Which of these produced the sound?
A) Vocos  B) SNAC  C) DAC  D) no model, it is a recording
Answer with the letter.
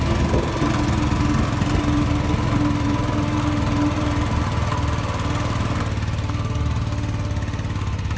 D